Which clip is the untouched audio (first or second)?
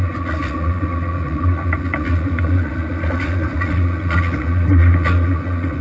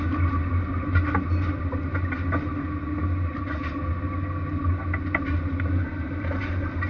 second